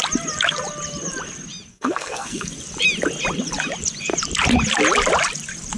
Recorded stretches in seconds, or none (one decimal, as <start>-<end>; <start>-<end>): 0.0-1.7; 2.5-5.8